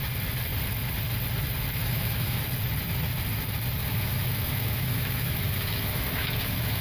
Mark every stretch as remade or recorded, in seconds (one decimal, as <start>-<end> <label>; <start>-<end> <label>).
0.0-1.8 recorded; 1.8-2.4 remade; 2.4-3.8 recorded; 3.8-6.8 remade